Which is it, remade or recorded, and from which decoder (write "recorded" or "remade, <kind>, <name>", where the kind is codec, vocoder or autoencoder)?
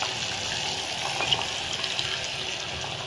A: recorded